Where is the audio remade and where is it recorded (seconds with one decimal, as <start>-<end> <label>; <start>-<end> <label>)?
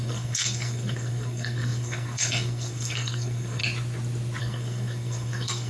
0.0-3.6 remade; 3.6-4.4 recorded; 4.4-5.7 remade